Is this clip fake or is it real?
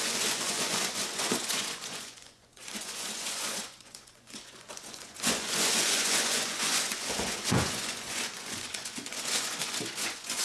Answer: fake